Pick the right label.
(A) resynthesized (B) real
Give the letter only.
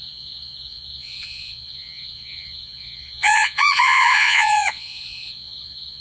A